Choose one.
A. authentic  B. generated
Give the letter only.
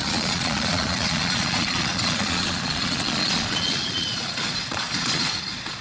B